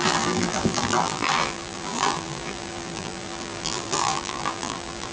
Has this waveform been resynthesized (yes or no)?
yes